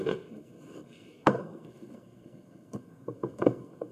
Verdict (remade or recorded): remade